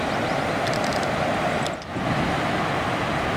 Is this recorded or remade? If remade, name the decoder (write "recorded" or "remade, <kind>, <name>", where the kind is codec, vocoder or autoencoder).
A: recorded